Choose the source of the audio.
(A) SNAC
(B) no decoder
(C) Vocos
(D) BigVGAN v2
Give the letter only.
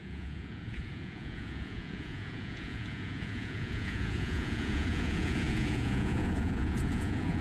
C